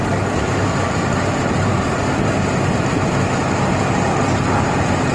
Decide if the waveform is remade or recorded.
recorded